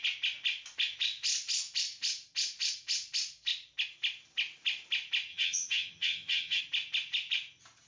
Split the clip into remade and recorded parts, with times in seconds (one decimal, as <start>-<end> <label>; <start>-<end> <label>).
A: 0.0-5.3 recorded; 5.3-6.6 remade; 6.6-7.9 recorded